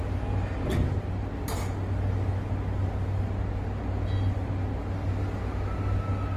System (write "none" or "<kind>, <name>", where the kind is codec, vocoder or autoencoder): none